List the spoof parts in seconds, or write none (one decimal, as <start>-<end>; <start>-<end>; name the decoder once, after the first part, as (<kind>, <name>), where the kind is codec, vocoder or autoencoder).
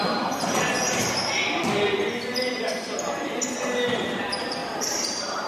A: 0.0-1.0 (vocoder, BigVGAN v2); 2.4-5.5